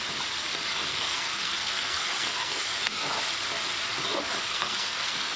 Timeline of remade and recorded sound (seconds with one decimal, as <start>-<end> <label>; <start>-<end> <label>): 0.0-0.9 recorded; 0.9-3.2 remade; 3.2-4.5 recorded; 4.5-5.4 remade